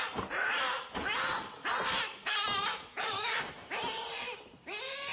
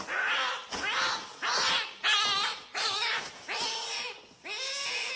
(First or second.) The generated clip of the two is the first